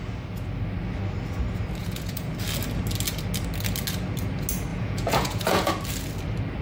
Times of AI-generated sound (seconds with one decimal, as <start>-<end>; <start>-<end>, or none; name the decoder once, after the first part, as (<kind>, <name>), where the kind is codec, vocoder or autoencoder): 1.8-2.3 (vocoder, Vocos); 4.7-5.7